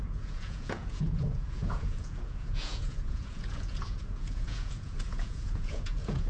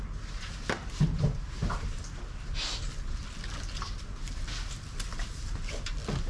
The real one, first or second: second